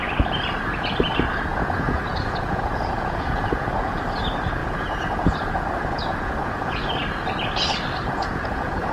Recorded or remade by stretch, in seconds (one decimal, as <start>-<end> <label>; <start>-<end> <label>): 0.0-1.5 recorded; 1.5-3.9 remade; 3.9-4.6 recorded; 4.6-6.9 remade; 6.9-8.0 recorded; 8.0-8.9 remade